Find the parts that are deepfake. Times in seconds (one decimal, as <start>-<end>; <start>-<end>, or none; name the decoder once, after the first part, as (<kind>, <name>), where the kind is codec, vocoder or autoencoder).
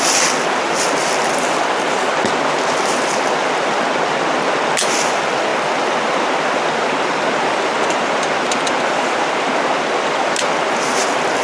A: none